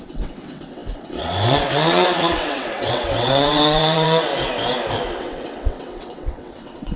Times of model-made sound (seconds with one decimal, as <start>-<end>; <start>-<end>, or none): 0.0-4.3; 5.2-7.0